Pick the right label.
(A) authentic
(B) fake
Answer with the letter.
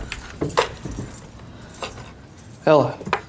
A